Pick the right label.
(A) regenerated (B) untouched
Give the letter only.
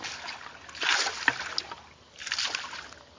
B